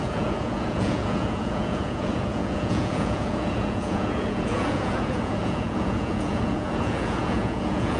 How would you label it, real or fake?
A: fake